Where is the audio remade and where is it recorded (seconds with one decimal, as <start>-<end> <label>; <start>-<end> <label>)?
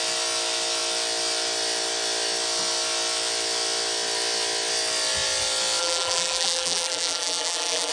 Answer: 0.0-5.8 recorded; 5.8-7.9 remade